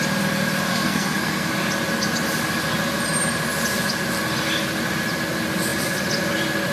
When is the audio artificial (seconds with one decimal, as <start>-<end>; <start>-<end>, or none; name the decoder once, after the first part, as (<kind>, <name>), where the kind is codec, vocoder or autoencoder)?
0.7-1.5 (codec, SNAC)